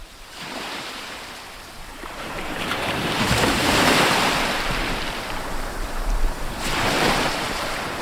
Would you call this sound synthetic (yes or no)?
yes